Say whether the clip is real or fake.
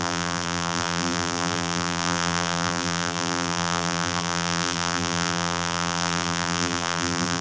fake